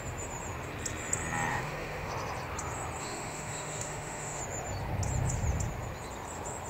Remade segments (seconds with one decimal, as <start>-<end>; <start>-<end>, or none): 1.5-2.1; 3.0-4.4